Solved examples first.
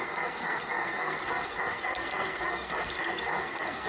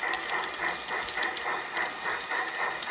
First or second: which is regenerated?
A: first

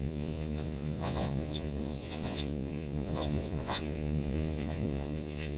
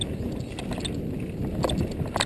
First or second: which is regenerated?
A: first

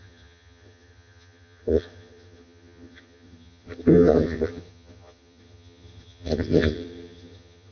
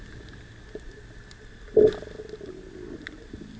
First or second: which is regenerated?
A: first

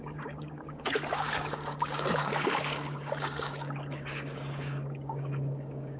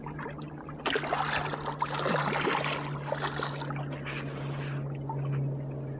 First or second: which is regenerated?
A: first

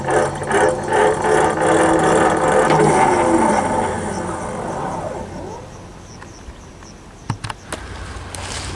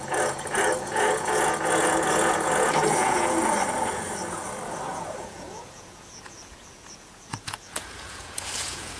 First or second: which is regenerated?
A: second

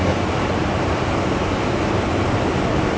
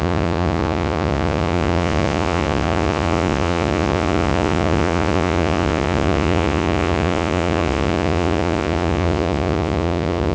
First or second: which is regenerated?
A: second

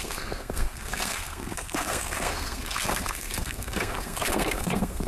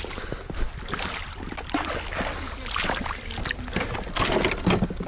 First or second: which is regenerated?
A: first